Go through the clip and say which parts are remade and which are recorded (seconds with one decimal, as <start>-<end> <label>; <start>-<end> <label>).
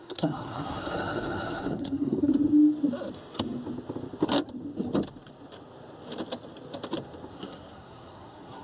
0.0-2.3 remade; 2.3-7.3 recorded; 7.3-8.6 remade